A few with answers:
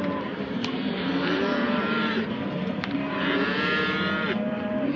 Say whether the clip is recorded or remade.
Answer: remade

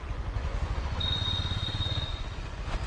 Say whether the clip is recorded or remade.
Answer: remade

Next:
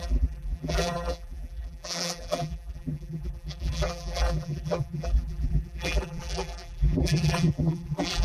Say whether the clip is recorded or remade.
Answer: remade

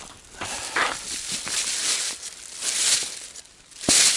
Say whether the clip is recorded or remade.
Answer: recorded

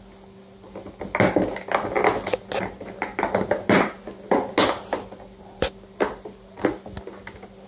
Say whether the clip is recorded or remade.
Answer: recorded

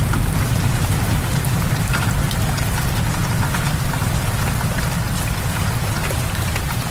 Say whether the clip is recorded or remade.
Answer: recorded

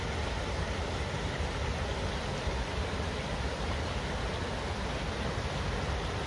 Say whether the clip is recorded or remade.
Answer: recorded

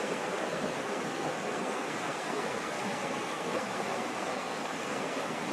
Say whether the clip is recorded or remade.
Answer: remade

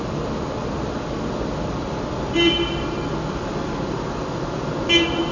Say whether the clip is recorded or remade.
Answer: recorded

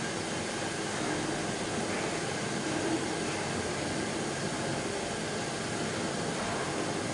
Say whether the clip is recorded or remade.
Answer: recorded